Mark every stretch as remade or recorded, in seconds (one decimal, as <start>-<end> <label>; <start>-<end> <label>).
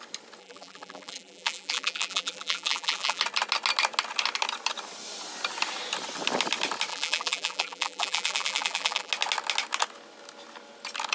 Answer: 0.0-0.4 recorded; 0.4-3.2 remade; 3.2-6.9 recorded; 6.9-9.1 remade; 9.1-11.1 recorded